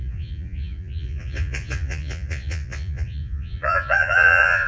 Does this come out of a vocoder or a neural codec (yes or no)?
yes